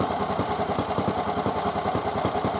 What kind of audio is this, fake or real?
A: real